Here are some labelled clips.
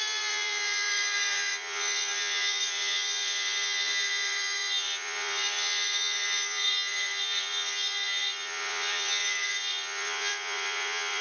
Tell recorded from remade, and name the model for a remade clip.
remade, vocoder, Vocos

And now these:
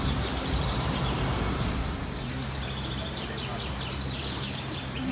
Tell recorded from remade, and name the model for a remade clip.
remade, vocoder, BigVGAN v2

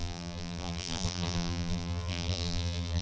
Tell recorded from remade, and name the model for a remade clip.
remade, vocoder, BigVGAN v2